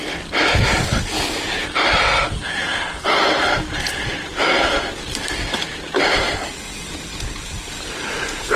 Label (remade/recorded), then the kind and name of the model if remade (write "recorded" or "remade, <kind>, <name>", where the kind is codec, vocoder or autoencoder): recorded